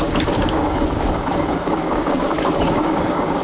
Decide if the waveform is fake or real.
fake